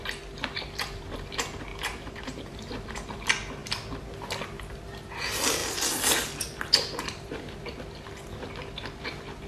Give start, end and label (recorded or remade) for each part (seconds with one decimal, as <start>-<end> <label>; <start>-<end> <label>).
0.0-1.7 recorded; 1.7-3.2 remade; 3.2-9.5 recorded